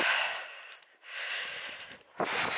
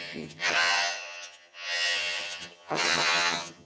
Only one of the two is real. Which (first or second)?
first